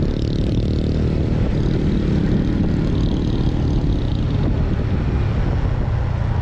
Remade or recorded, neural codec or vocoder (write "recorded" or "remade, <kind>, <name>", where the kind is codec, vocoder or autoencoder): recorded